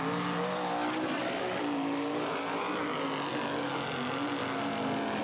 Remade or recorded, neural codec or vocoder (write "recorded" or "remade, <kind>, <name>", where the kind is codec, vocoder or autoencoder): recorded